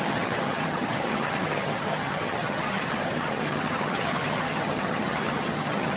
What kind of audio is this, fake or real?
fake